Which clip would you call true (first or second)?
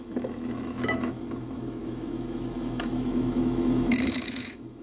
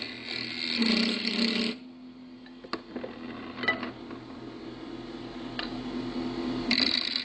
second